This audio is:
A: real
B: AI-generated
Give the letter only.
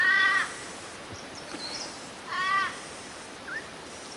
B